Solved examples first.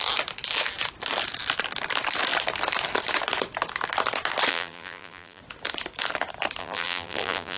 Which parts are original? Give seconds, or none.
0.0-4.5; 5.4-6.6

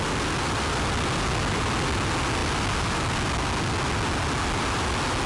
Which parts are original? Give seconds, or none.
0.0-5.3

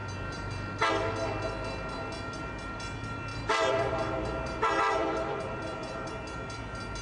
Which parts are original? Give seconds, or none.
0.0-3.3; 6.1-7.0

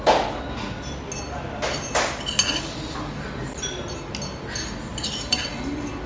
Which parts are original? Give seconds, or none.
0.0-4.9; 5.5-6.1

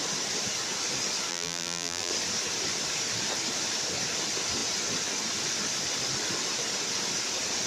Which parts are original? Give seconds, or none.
0.0-1.3; 2.1-7.7

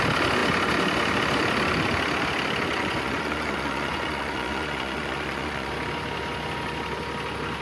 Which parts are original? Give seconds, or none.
0.0-2.7; 5.7-7.6

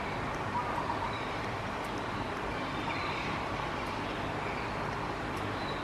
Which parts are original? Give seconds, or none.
0.0-0.6; 1.4-5.8

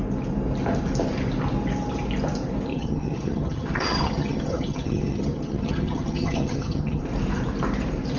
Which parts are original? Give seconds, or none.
0.0-2.7; 7.0-8.2